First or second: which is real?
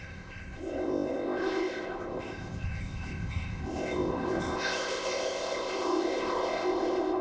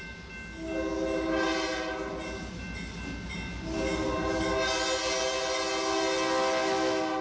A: second